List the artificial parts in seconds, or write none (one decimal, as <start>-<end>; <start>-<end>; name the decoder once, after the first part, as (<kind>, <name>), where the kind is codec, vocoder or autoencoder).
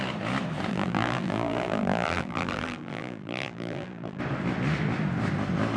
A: 0.7-4.2 (vocoder, BigVGAN v2)